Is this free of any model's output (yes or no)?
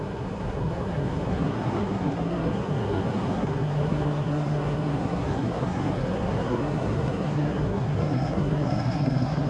no